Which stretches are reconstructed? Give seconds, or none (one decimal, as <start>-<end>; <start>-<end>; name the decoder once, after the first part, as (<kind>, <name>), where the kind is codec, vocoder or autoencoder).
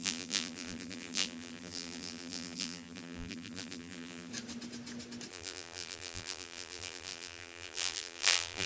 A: 0.0-4.3 (vocoder, BigVGAN v2); 5.3-8.7